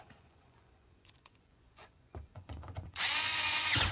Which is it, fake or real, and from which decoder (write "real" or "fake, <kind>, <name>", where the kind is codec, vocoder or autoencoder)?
fake, vocoder, Vocos